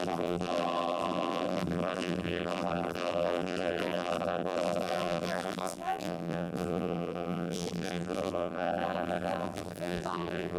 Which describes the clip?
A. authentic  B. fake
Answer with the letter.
B